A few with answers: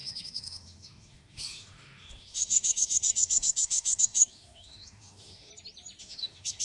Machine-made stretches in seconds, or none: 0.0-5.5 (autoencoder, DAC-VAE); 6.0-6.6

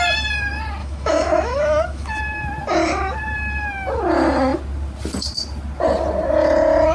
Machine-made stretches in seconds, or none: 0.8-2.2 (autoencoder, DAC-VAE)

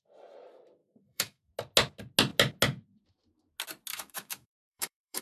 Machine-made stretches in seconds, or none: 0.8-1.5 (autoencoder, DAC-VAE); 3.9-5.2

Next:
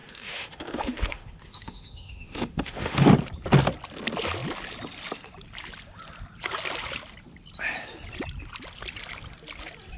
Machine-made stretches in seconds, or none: 0.0-3.1 (autoencoder, DAC-VAE)

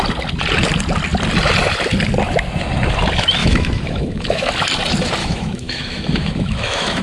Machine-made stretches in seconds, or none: 3.4-4.5 (autoencoder, DAC-VAE); 5.2-7.0

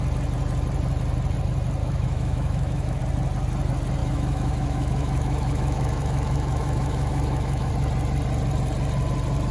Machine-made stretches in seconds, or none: 1.8-3.0 (autoencoder, DAC-VAE); 4.0-7.7

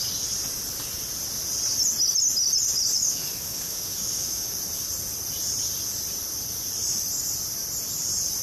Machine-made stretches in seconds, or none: 3.0-4.5 (autoencoder, DAC-VAE)